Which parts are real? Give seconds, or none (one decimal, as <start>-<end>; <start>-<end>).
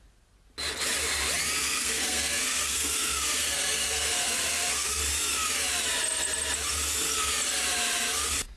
0.0-1.6; 5.0-8.6